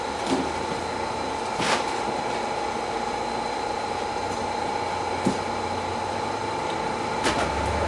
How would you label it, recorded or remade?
recorded